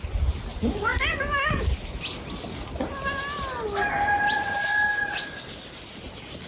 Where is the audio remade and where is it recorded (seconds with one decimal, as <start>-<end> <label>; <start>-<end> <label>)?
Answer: 0.0-6.5 recorded